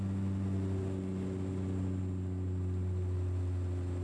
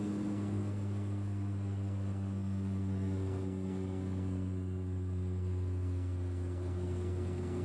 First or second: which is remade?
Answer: second